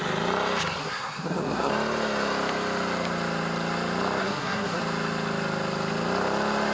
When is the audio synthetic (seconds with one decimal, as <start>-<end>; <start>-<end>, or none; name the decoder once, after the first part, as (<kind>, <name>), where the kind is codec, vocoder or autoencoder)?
0.8-1.7 (codec, SNAC); 4.2-4.8